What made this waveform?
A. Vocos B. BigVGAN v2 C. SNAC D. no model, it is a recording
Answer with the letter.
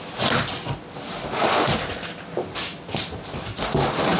D